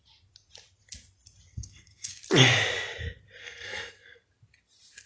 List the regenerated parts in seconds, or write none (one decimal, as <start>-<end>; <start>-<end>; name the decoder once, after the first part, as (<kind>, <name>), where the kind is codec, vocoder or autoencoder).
1.5-2.2 (codec, SNAC); 3.4-4.2